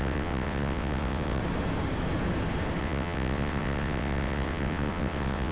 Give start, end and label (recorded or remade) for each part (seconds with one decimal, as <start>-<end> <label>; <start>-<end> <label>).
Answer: 0.0-1.4 remade; 1.4-2.8 recorded; 2.8-5.5 remade